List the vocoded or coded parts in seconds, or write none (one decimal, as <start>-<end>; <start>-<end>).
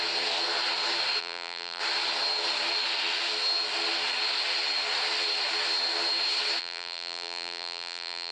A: 1.2-1.8; 6.6-8.3